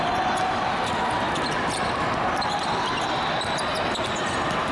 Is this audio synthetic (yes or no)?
no